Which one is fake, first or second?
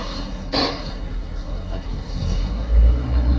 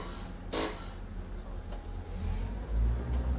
first